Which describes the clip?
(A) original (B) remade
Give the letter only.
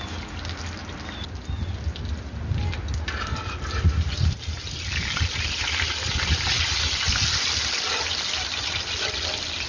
A